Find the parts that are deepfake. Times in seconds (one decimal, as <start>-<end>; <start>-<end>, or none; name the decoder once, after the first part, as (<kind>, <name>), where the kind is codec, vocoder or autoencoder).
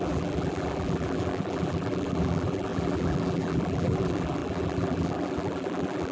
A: 0.0-6.1 (vocoder, BigVGAN v2)